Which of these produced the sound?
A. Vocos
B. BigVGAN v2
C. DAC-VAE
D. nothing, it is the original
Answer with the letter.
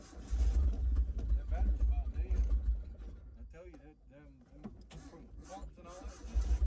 D